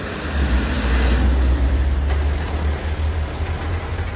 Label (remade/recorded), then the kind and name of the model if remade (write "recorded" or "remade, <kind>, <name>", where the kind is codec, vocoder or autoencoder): recorded